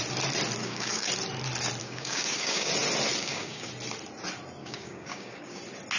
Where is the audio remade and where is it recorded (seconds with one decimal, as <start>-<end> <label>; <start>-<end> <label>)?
0.0-0.6 recorded; 0.6-1.1 remade; 1.1-1.8 recorded; 1.8-2.7 remade; 2.7-3.2 recorded; 3.2-3.7 remade; 3.7-4.6 recorded; 4.6-5.6 remade; 5.6-6.0 recorded